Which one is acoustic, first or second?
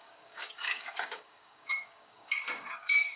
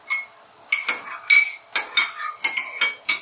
second